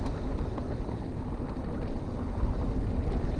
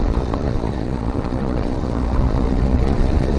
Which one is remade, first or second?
second